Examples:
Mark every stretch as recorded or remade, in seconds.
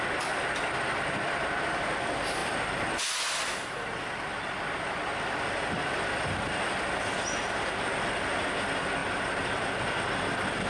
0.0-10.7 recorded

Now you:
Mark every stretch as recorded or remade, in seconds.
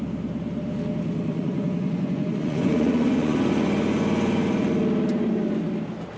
0.0-1.3 recorded; 1.3-4.7 remade; 4.7-6.2 recorded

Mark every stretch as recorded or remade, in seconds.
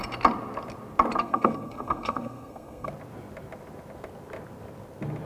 0.0-1.2 recorded; 1.2-2.9 remade; 2.9-5.3 recorded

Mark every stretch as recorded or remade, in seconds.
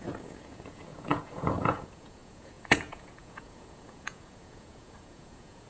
0.0-5.7 remade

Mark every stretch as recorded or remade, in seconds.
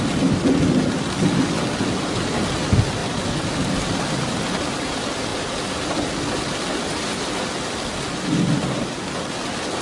0.0-9.8 recorded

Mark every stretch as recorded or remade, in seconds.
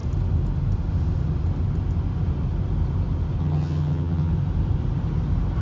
0.0-3.4 recorded; 3.4-4.3 remade; 4.3-5.6 recorded